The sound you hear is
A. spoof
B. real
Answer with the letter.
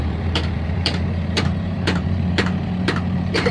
A